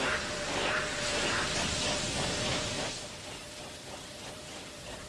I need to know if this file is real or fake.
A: real